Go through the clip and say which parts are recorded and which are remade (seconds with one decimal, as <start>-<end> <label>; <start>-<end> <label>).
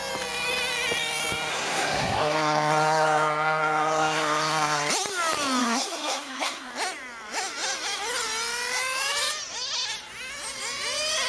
0.0-1.5 recorded; 1.5-4.9 remade; 4.9-5.6 recorded; 5.6-6.7 remade; 6.7-11.3 recorded